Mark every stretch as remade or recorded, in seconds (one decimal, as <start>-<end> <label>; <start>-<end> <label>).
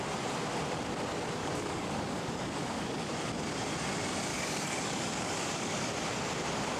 0.0-1.4 recorded; 1.4-3.3 remade; 3.3-4.3 recorded; 4.3-5.9 remade; 5.9-6.8 recorded